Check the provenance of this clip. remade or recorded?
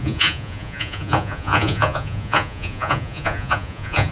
remade